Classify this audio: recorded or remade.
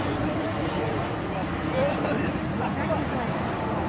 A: recorded